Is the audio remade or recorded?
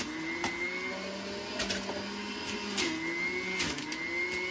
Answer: recorded